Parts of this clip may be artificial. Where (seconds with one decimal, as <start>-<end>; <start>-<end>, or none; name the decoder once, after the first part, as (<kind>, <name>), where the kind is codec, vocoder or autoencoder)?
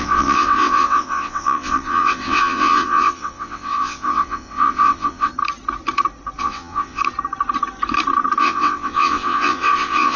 0.0-5.3 (vocoder, WaveNeXt); 6.4-7.0; 8.4-10.2